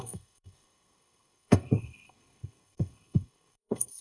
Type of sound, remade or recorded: remade